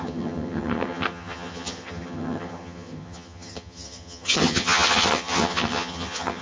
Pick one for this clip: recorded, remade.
remade